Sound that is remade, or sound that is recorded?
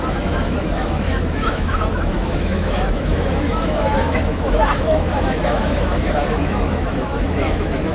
remade